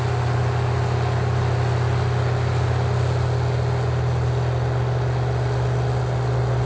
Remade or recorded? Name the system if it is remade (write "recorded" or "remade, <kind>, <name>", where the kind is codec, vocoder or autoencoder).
recorded